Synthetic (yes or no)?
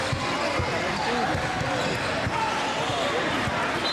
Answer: no